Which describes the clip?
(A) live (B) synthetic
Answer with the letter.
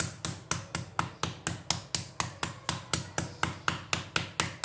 A